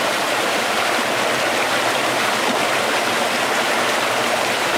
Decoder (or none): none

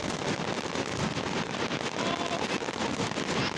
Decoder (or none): none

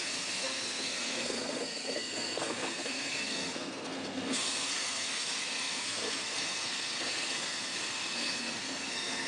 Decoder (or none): codec, SNAC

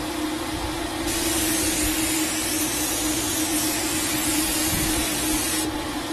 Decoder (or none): none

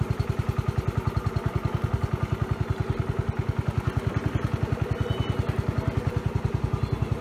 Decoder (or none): none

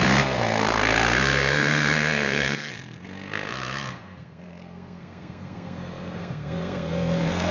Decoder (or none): codec, SNAC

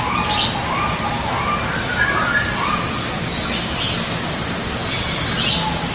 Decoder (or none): none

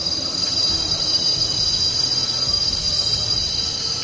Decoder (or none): none